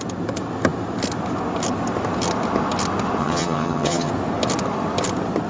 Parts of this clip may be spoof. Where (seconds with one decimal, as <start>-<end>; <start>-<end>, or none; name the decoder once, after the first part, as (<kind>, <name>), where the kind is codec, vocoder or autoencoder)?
3.2-4.1 (vocoder, HiFi-GAN)